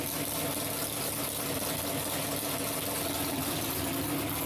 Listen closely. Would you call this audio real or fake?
real